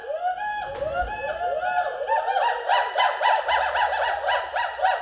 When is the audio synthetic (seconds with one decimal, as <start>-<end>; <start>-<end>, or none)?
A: none